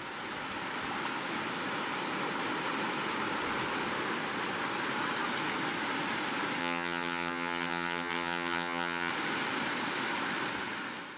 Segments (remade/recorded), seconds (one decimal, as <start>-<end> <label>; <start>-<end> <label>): 0.0-6.6 recorded; 6.6-9.1 remade; 9.1-11.2 recorded